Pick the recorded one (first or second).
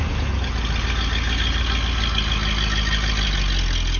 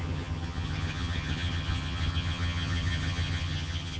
first